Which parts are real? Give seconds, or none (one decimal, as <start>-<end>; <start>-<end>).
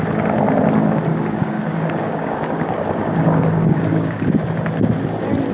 0.0-1.1; 4.4-5.5